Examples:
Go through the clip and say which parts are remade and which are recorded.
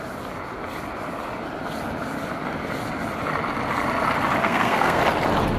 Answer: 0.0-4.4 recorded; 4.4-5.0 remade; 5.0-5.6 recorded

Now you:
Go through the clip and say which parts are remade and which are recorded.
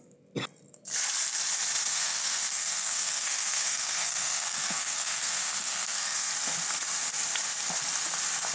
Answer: 0.0-1.9 recorded; 1.9-6.3 remade; 6.3-8.5 recorded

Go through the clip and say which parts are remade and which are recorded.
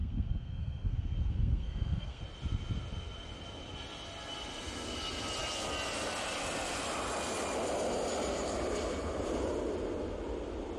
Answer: 0.0-2.2 remade; 2.2-10.8 recorded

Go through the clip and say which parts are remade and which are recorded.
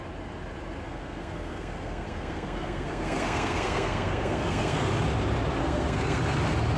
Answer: 0.0-0.8 recorded; 0.8-4.9 remade; 4.9-5.6 recorded; 5.6-6.2 remade; 6.2-6.8 recorded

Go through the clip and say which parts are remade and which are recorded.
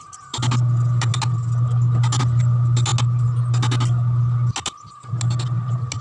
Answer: 0.0-6.0 recorded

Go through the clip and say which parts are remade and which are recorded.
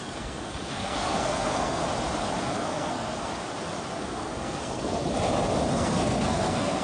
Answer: 0.0-1.8 remade; 1.8-2.4 recorded; 2.4-3.3 remade; 3.3-4.0 recorded; 4.0-5.0 remade; 5.0-5.7 recorded; 5.7-6.8 remade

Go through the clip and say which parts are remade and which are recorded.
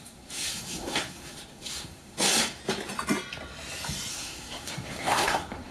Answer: 0.0-2.6 remade; 2.6-4.1 recorded; 4.1-5.7 remade